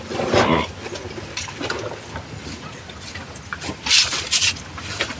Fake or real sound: real